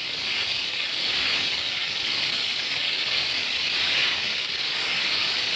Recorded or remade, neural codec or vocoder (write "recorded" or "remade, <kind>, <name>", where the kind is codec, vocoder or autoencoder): remade, codec, DAC